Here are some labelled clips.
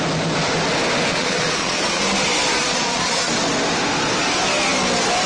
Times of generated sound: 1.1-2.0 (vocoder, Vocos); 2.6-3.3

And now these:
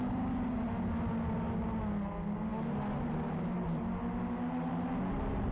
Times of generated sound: none

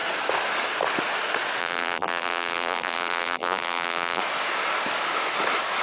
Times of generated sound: 1.6-4.2 (vocoder, BigVGAN v2)

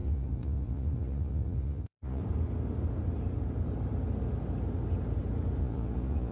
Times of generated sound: 0.0-2.2 (vocoder, Vocos); 5.6-6.3

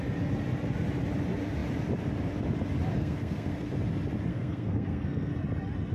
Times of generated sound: 2.9-3.7 (codec, SNAC); 4.3-5.3

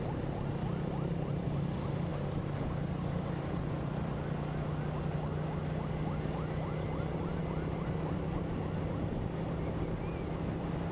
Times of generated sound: none